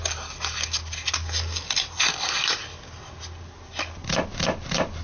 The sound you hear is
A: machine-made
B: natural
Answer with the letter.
B